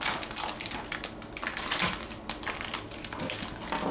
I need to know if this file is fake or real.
real